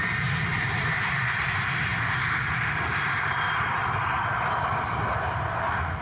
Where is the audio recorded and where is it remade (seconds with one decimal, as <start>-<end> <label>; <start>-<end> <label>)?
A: 0.0-3.8 remade; 3.8-5.5 recorded; 5.5-6.0 remade